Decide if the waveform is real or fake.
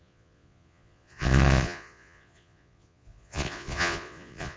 fake